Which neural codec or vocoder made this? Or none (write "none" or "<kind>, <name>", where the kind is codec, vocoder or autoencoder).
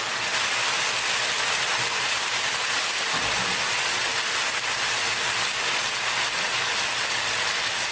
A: none